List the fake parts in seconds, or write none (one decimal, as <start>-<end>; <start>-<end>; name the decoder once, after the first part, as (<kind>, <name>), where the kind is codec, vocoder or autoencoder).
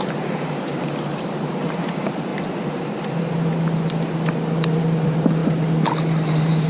0.0-2.3 (vocoder, BigVGAN v2); 4.8-5.4; 6.3-6.7